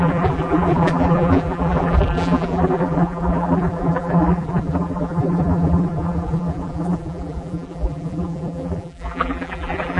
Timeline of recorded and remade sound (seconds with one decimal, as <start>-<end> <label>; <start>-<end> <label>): 0.0-10.0 remade